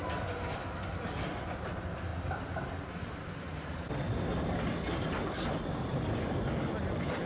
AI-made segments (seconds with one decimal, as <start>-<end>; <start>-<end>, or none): none